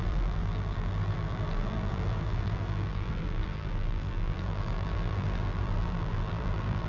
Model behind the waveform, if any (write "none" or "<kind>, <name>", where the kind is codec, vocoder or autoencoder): vocoder, BigVGAN v2